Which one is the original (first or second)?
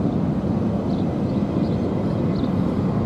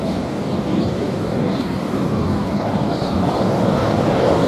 first